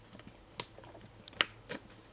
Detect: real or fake real